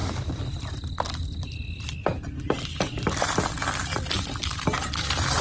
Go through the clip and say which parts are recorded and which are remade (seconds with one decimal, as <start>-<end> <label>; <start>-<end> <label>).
0.0-3.8 recorded; 3.8-5.4 remade